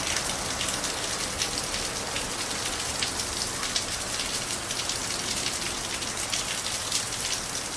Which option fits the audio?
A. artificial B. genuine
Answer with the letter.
B